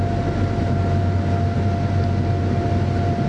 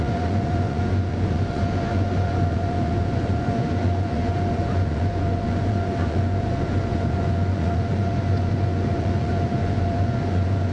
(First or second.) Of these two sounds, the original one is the first